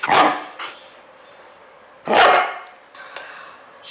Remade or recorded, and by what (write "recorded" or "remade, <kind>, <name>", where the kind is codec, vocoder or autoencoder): recorded